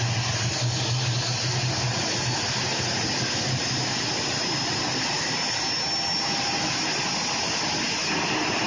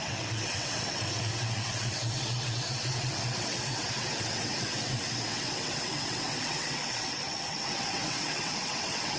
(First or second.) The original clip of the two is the first